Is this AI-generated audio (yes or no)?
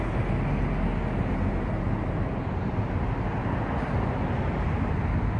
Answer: no